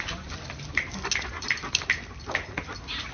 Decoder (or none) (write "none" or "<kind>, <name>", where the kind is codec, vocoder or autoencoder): none